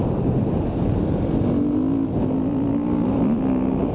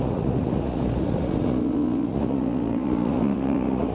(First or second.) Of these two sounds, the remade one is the second